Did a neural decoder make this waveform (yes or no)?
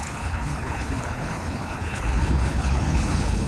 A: yes